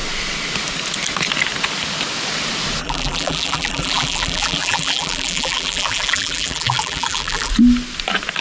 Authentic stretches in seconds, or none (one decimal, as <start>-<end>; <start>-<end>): 0.0-2.8; 7.5-8.4

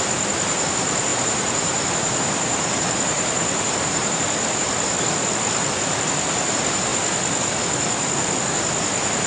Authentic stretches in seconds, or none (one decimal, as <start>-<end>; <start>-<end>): 0.0-1.1; 4.2-9.3

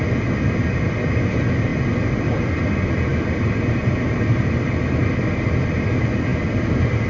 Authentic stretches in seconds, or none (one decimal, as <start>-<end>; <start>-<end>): 0.0-7.1

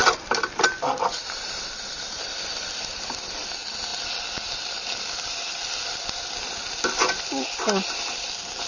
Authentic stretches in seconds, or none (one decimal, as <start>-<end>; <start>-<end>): 2.7-8.7

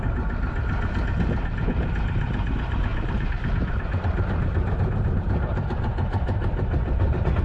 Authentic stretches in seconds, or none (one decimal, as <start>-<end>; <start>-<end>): none

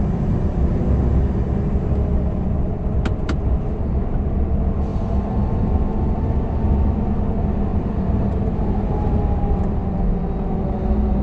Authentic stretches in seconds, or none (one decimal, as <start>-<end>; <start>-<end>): 0.0-4.9; 6.2-7.7; 9.2-11.2